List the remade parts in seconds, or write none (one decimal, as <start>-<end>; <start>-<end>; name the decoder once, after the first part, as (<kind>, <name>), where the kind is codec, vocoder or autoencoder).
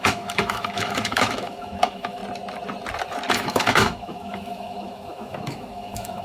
0.0-2.2 (autoencoder, DAC-VAE); 3.3-6.2